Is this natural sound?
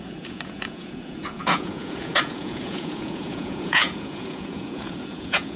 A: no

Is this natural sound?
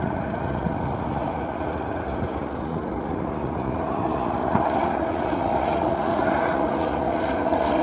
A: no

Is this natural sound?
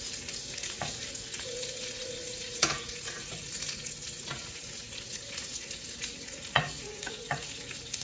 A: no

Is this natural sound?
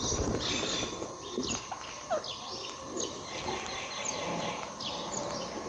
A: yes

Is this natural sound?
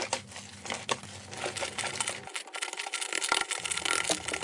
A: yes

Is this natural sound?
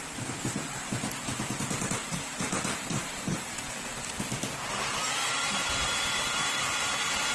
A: yes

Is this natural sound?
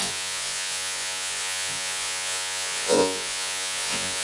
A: no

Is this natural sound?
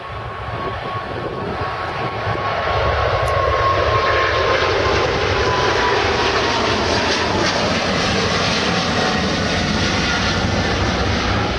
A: yes